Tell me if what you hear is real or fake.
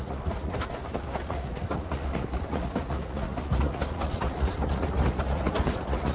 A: fake